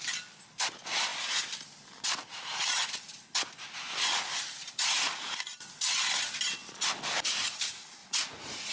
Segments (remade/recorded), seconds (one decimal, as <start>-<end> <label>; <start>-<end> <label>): 0.0-4.6 recorded; 4.6-5.3 remade; 5.3-8.0 recorded; 8.0-8.7 remade